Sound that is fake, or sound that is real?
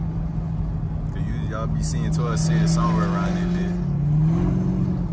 real